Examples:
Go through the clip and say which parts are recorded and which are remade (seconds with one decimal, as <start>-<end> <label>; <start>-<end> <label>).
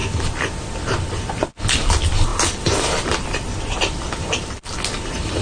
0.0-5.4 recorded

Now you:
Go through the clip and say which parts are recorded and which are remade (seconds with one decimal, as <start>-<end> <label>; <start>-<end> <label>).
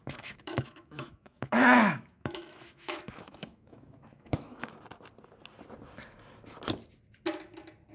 0.0-4.7 remade; 4.7-7.9 recorded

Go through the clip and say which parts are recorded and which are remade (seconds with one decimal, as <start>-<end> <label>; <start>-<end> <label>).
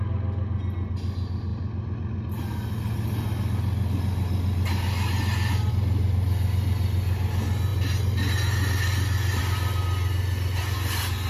0.0-11.3 recorded